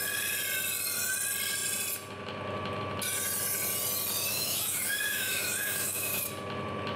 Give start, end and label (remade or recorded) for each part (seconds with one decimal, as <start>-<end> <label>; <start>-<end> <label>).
0.0-4.3 recorded; 4.3-6.3 remade; 6.3-7.0 recorded